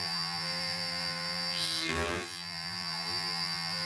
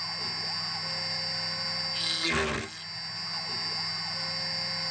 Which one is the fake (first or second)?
first